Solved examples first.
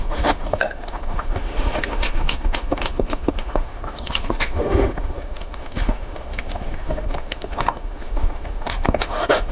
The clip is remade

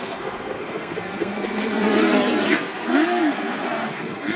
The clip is remade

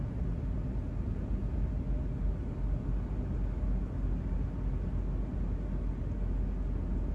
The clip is recorded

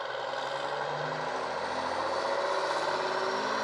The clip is recorded